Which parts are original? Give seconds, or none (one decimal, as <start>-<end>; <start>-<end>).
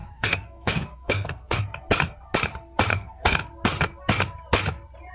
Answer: 1.6-2.9; 3.4-5.1